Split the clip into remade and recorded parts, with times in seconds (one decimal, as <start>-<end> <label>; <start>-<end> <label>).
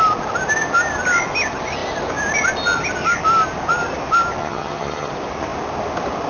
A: 0.0-4.4 recorded; 4.4-5.1 remade; 5.1-6.3 recorded